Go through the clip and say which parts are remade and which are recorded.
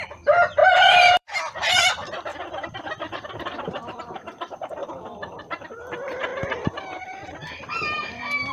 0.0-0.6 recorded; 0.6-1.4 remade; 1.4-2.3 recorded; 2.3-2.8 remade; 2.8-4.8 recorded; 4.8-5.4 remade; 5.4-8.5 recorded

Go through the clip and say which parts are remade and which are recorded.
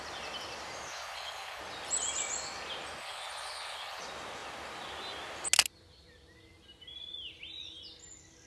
0.0-0.9 recorded; 0.9-1.6 remade; 1.6-3.0 recorded; 3.0-4.0 remade; 4.0-8.5 recorded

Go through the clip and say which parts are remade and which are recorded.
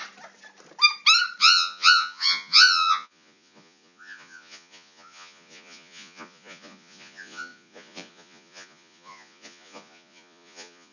0.0-1.4 recorded; 1.4-10.9 remade